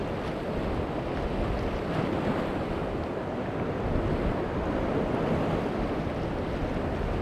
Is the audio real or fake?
real